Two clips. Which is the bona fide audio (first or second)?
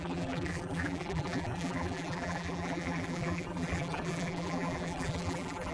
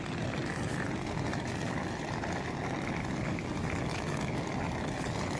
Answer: second